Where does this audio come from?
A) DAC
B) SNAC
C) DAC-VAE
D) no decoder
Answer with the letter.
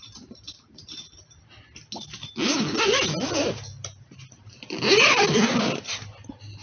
D